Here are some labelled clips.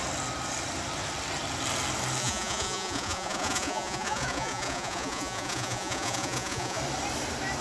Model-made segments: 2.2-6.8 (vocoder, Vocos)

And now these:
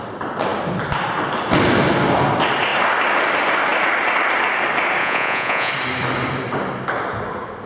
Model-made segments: 5.0-5.7 (vocoder, Vocos)

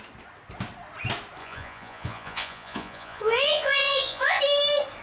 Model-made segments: 1.4-4.4 (vocoder, Vocos)

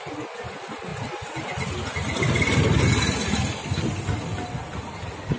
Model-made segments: none